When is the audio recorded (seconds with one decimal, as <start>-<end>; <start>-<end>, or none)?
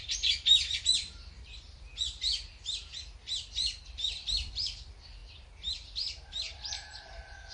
1.9-2.4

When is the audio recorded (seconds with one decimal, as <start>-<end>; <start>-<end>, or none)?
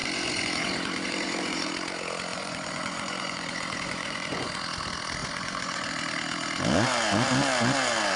1.7-2.3; 4.6-5.2; 5.9-8.2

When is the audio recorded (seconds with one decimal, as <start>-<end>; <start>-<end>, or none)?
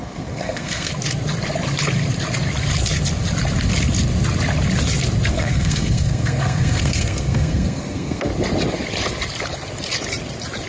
0.9-5.3; 8.3-10.7